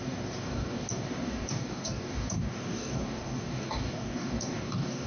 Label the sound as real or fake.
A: fake